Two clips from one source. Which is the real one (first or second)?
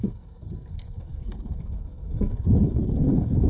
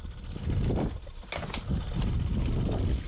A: second